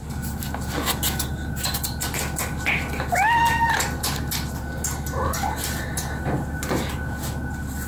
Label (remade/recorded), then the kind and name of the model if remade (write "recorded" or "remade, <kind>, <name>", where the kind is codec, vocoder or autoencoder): recorded